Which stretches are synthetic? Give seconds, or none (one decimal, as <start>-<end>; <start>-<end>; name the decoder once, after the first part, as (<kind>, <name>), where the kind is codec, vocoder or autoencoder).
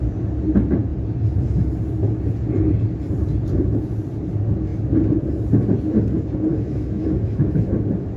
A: 6.5-7.7 (autoencoder, DAC-VAE)